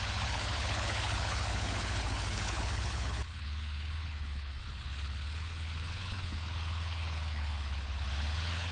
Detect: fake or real fake